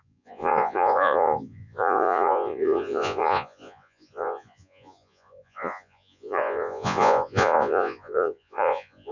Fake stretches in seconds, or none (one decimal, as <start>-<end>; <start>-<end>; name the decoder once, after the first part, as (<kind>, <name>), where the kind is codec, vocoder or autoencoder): 0.0-9.1 (vocoder, Vocos)